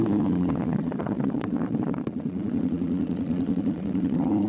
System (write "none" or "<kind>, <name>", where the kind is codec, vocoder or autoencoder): vocoder, Vocos